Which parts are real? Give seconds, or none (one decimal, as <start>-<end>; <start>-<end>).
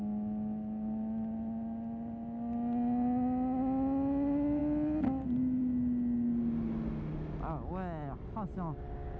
0.0-9.2